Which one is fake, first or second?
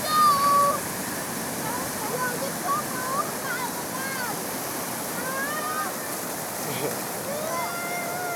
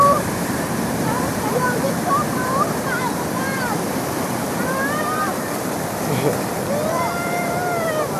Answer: second